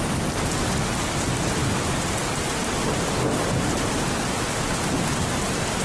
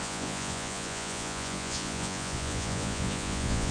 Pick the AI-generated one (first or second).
second